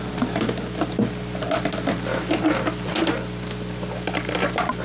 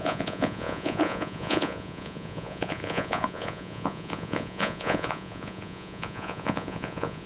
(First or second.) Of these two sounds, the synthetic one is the second